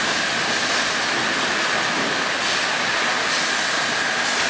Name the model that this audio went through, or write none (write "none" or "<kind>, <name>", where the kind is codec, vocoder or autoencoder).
none